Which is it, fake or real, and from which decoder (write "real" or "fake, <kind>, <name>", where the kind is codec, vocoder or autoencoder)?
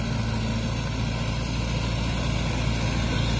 real